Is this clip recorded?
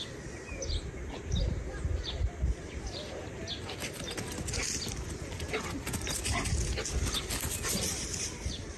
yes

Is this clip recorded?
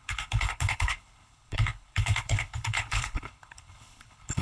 no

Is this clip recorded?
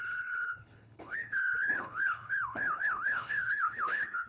no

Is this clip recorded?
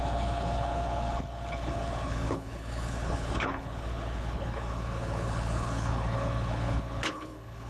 no